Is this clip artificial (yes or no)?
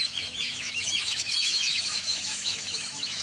yes